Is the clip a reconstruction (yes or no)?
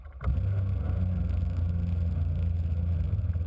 no